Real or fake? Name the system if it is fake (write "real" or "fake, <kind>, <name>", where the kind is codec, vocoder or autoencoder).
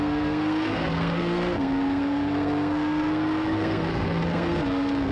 fake, codec, SNAC